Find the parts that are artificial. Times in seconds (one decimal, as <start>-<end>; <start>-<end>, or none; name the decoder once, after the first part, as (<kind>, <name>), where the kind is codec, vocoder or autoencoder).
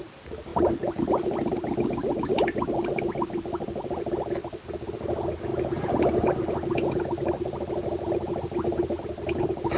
none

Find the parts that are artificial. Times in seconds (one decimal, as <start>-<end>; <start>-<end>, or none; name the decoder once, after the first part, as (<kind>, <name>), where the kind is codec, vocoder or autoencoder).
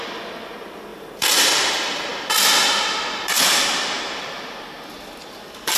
0.9-1.7 (vocoder, BigVGAN v2)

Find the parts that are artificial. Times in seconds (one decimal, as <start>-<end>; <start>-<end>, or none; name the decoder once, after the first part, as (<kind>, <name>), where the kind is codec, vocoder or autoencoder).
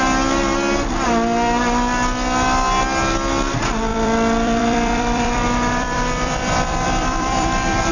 3.9-7.9 (vocoder, BigVGAN v2)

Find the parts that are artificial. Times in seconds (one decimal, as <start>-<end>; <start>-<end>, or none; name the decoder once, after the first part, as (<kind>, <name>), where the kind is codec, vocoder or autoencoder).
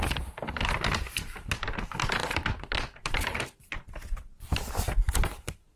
2.2-4.7 (vocoder, BigVGAN v2)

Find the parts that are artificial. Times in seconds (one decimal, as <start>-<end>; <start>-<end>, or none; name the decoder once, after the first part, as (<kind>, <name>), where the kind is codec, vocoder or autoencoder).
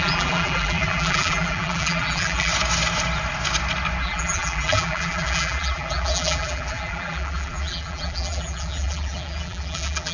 0.0-2.5 (vocoder, BigVGAN v2); 4.0-10.1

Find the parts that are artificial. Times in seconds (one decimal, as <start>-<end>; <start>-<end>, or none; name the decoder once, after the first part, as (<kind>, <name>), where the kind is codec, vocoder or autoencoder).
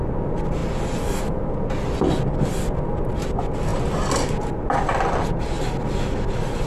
none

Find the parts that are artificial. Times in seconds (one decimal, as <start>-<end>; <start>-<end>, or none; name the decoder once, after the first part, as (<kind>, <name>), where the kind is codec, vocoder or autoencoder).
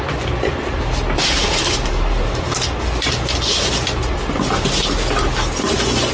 1.4-2.6 (vocoder, BigVGAN v2)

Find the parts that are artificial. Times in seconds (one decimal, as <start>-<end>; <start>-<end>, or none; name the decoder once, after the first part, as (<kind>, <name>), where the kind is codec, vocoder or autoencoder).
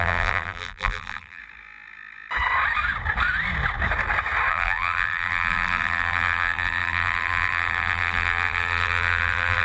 0.0-1.4 (vocoder, BigVGAN v2); 4.5-9.6